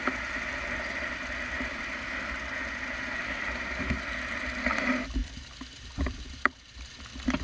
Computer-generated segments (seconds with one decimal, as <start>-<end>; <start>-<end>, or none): 5.2-6.8